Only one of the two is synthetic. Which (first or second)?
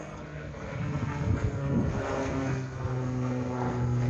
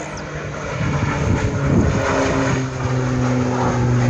first